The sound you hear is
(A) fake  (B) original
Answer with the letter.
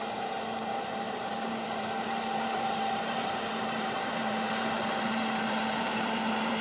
A